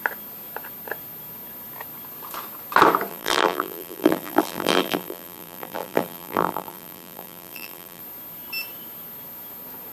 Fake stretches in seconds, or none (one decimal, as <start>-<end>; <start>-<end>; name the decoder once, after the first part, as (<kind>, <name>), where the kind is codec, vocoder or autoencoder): 3.1-8.0 (vocoder, BigVGAN v2)